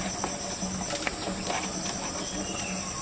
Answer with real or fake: real